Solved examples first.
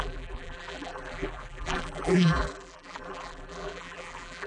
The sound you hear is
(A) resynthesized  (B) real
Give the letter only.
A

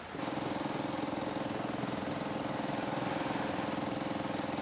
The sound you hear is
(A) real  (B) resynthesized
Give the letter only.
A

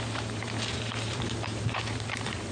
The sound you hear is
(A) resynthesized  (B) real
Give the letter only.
A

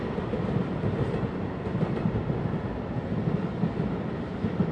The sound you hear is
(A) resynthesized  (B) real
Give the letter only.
A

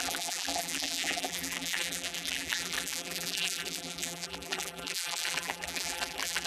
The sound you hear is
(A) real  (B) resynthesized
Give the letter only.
B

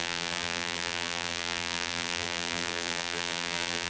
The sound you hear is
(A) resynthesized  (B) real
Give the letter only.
A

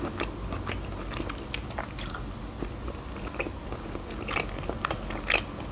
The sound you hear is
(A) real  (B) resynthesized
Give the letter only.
A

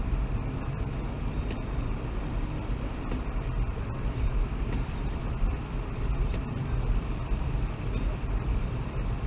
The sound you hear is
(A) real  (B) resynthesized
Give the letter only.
B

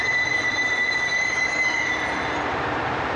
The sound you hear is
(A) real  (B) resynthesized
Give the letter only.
B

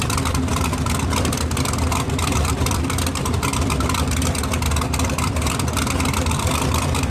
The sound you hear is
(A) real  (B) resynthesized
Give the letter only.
B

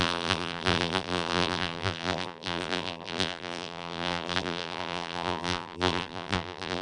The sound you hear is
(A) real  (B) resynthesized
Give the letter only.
B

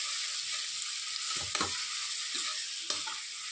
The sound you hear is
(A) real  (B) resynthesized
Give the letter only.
A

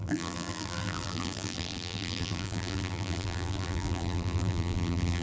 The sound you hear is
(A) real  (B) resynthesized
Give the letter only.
B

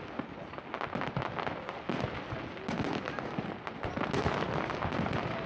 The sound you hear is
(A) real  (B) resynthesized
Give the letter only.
A